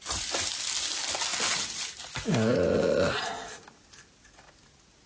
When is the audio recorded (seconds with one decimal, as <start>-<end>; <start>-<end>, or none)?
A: 0.0-5.1